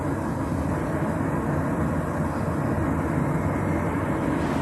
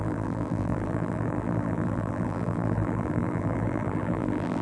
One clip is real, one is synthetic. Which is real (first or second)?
first